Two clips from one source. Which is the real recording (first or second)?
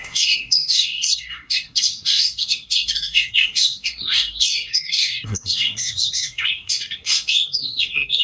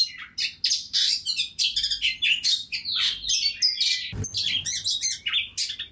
second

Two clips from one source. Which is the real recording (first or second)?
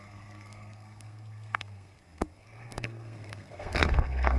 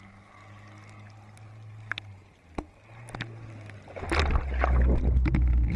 second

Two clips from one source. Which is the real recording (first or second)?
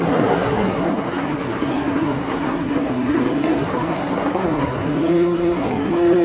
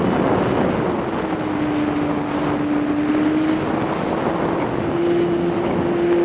second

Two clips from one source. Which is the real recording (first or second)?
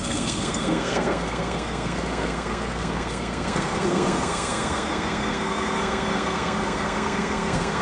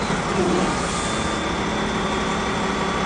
second